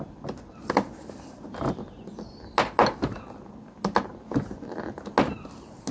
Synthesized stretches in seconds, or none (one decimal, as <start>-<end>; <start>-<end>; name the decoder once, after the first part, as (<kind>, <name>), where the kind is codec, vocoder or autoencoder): none